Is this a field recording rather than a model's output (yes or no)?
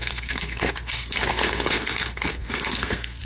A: no